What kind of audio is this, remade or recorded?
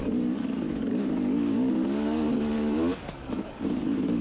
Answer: remade